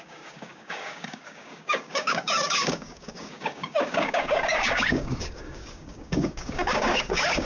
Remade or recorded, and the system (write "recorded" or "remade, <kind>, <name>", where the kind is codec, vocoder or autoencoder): remade, codec, DAC